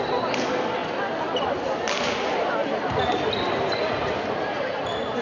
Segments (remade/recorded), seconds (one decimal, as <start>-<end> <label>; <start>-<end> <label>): 0.0-5.2 recorded